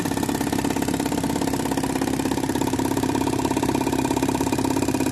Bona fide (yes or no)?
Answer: yes